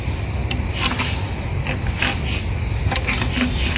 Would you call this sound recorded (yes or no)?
yes